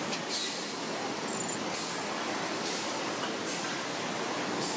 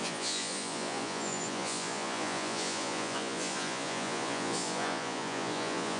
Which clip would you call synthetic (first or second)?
second